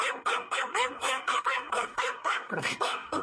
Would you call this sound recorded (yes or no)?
no